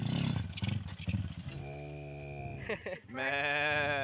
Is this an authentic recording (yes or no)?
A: yes